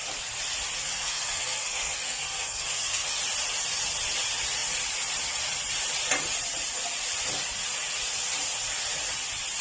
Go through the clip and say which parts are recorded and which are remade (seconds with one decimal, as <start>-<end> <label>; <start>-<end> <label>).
0.0-0.8 recorded; 0.8-3.2 remade; 3.2-9.6 recorded